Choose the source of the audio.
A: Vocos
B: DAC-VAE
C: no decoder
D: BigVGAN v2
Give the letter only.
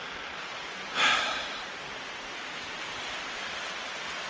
C